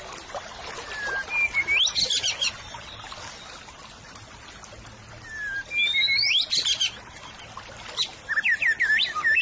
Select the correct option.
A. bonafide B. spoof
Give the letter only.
A